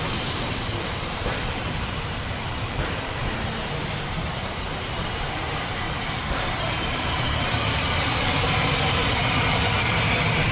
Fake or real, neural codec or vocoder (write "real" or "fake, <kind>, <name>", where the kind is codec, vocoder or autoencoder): fake, vocoder, BigVGAN v2